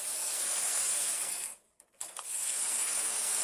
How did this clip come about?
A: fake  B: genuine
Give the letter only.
A